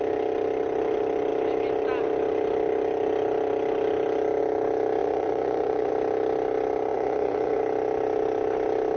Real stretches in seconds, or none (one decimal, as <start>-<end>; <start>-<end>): 0.0-5.0; 5.9-6.9; 7.6-9.0